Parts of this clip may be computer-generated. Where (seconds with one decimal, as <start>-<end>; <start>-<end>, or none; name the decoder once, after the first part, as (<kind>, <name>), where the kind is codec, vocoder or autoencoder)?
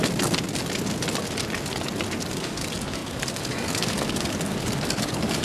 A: 2.3-5.4 (codec, DAC)